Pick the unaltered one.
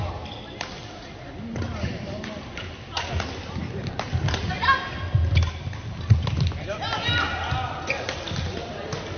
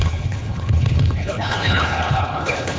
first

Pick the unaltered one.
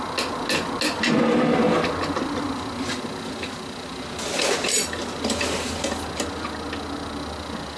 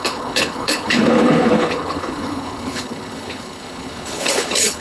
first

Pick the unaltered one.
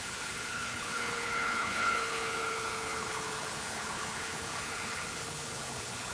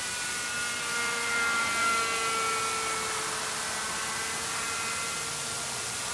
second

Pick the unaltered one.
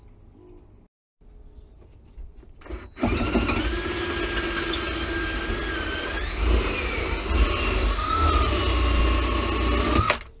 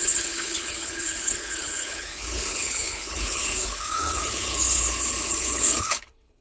first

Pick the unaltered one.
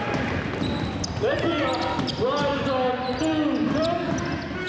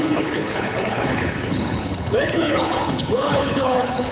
first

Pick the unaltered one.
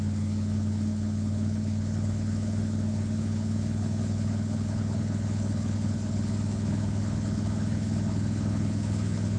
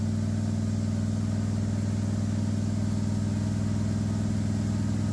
second